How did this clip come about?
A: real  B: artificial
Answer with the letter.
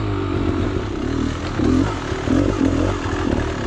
A